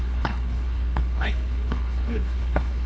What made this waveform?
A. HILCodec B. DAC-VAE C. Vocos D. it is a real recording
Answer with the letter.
A